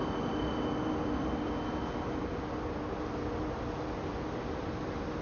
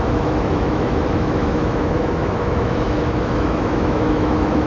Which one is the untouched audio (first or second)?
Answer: first